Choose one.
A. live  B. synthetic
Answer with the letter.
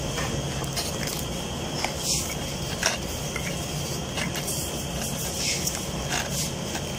A